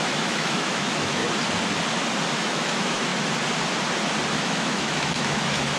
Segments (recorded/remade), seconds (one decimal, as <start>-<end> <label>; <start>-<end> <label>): 0.0-1.2 remade; 1.2-2.3 recorded; 2.3-3.1 remade; 3.1-4.4 recorded; 4.4-5.8 remade